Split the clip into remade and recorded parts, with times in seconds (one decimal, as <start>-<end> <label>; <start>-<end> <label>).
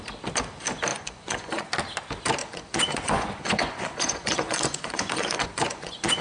0.0-0.9 recorded; 0.9-1.7 remade; 1.7-2.4 recorded; 2.4-6.2 remade